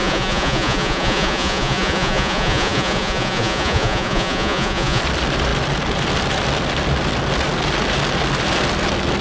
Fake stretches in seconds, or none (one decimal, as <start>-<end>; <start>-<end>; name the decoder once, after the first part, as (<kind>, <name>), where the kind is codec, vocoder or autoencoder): 0.0-5.0 (vocoder, Vocos)